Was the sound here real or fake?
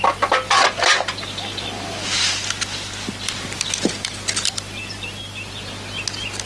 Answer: real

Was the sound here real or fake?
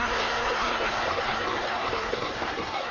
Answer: fake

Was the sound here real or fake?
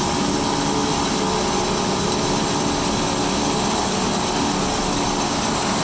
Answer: real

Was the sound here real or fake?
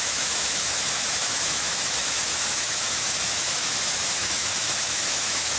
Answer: fake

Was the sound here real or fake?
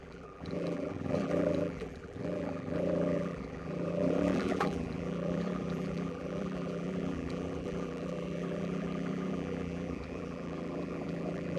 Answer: fake